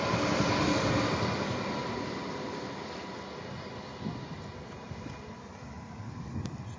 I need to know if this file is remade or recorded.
recorded